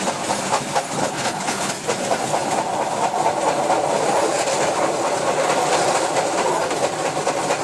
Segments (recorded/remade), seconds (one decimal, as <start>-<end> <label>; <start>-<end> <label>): 0.0-1.0 recorded; 1.0-1.7 remade; 1.7-7.6 recorded